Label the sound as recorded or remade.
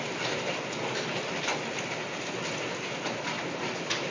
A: recorded